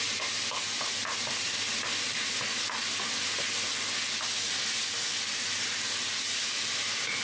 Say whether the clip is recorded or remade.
recorded